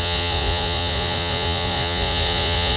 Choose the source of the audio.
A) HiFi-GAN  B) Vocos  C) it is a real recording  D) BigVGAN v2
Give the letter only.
B